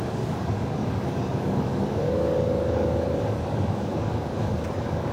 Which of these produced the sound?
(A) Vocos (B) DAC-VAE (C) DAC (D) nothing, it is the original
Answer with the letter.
C